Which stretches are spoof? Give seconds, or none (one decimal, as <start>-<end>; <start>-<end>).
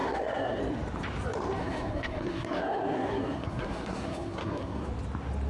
0.0-0.6; 1.6-4.9